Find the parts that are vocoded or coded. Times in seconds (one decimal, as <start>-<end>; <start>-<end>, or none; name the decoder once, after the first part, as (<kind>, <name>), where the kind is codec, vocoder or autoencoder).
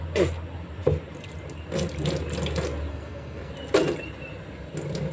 2.9-3.5 (codec, SNAC)